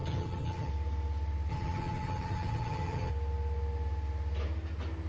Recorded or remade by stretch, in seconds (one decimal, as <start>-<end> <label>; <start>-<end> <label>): 0.0-0.7 remade; 0.7-1.5 recorded; 1.5-3.1 remade; 3.1-5.1 recorded